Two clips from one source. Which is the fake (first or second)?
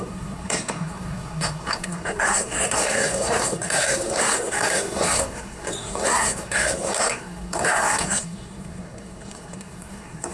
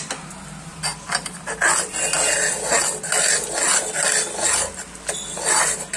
first